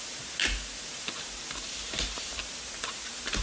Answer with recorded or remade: remade